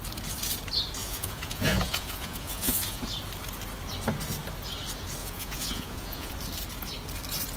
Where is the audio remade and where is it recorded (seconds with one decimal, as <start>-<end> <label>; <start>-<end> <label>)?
0.0-1.0 recorded; 1.0-3.0 remade; 3.0-5.2 recorded; 5.2-6.3 remade; 6.3-7.6 recorded